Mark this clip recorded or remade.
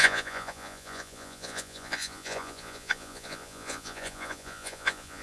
remade